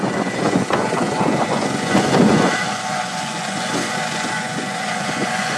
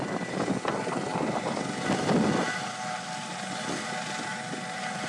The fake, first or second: first